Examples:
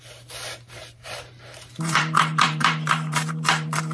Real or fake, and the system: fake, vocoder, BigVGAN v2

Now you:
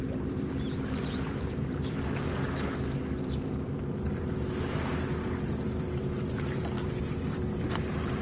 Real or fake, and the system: fake, vocoder, BigVGAN v2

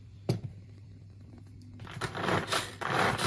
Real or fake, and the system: fake, vocoder, BigVGAN v2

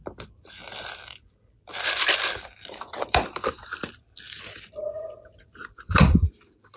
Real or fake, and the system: fake, vocoder, BigVGAN v2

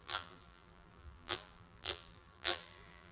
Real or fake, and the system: fake, vocoder, BigVGAN v2